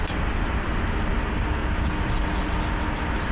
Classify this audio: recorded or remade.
recorded